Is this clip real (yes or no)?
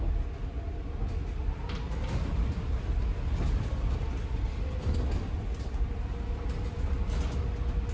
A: yes